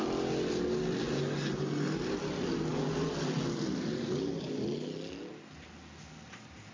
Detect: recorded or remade recorded